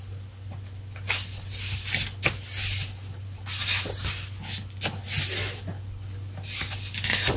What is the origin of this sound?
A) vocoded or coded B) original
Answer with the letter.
B